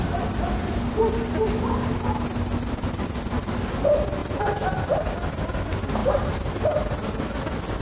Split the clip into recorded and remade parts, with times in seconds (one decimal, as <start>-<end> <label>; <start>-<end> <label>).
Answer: 0.0-7.8 recorded